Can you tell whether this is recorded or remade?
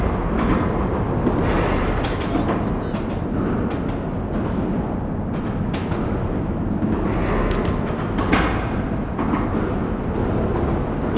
recorded